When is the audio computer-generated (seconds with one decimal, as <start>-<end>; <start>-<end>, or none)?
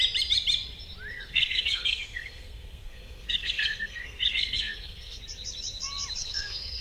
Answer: 1.1-5.2; 6.2-6.8